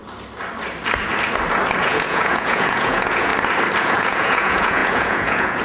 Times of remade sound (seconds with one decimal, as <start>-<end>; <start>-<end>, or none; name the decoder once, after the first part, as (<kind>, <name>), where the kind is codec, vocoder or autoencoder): 1.8-3.3 (vocoder, Vocos); 3.8-5.6